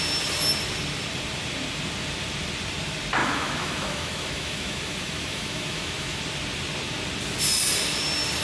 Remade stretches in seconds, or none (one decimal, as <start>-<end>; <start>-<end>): 3.2-6.2